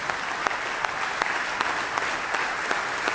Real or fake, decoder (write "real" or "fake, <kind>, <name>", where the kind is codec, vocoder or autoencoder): real